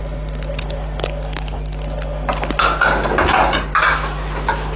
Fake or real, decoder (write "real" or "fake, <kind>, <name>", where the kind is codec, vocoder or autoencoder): real